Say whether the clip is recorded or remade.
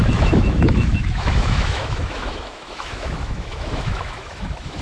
remade